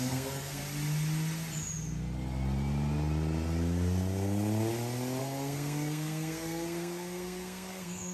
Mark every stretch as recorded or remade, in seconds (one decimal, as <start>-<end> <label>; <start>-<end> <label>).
0.0-0.6 remade; 0.6-5.2 recorded; 5.2-8.1 remade